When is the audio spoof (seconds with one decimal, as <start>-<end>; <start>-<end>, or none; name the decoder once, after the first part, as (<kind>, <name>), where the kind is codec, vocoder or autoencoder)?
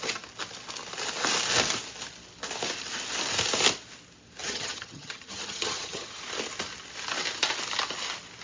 4.4-6.2 (vocoder, HiFi-GAN)